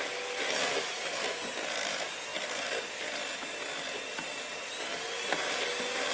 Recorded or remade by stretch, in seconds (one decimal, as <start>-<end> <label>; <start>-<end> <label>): 0.0-6.1 recorded